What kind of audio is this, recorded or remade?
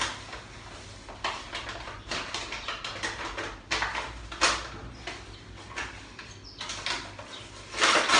recorded